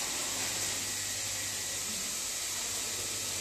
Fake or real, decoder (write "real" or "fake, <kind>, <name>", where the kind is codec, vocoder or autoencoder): real